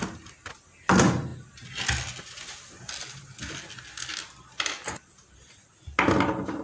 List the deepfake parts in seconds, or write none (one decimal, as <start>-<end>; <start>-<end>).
none